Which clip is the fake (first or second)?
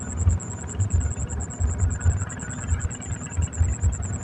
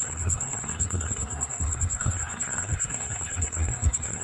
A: second